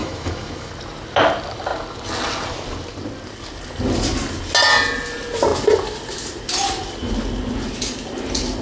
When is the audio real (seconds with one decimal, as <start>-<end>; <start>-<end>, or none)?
0.7-8.6